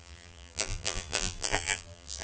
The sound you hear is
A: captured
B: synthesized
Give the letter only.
B